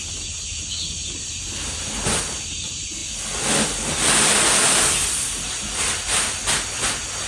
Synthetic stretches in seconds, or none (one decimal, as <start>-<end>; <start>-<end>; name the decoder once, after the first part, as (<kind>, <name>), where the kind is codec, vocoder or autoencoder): none

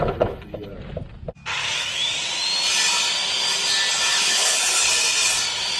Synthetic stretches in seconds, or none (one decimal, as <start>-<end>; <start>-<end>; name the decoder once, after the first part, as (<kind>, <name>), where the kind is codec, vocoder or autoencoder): 0.0-0.7 (codec, HILCodec); 4.1-4.9

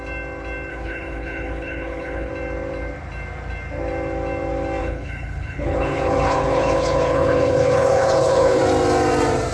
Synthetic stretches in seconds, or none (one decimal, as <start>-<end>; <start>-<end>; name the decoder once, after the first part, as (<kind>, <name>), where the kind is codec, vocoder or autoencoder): 0.7-2.3 (codec, HILCodec); 4.8-8.6